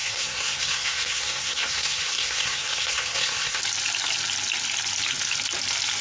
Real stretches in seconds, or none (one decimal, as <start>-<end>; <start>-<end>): 3.6-6.0